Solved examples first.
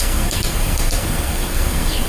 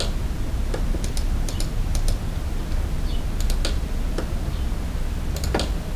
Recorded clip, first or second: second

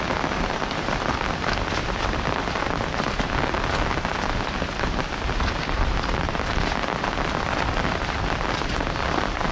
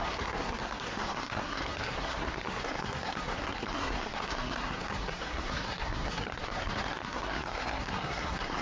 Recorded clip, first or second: first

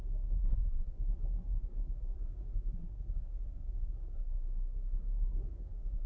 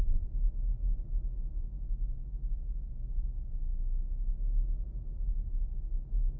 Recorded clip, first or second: second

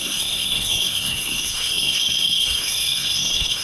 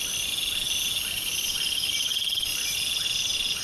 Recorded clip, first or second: second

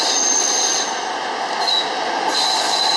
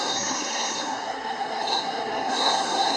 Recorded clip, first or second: first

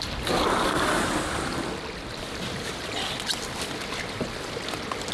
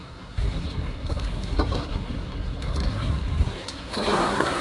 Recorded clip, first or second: first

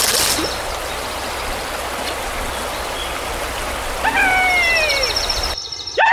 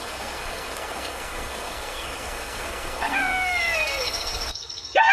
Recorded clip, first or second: first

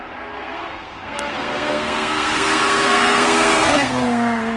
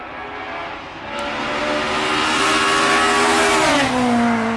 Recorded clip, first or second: second